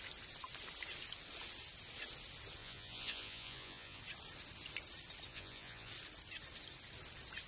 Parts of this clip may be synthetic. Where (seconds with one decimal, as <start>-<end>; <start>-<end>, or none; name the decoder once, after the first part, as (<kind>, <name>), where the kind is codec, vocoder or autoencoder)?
2.6-4.0 (vocoder, Vocos); 5.3-5.9